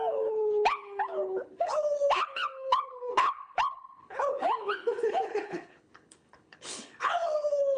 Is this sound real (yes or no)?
no